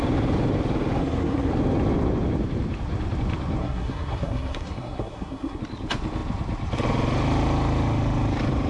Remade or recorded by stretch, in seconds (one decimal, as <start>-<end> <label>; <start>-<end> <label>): 0.0-1.0 recorded; 1.0-1.5 remade; 1.5-3.6 recorded; 3.6-5.6 remade; 5.6-8.7 recorded

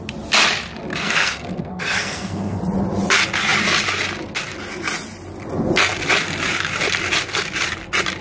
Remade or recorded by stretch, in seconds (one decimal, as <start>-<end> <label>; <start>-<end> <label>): 0.0-0.9 recorded; 0.9-2.6 remade; 2.6-8.2 recorded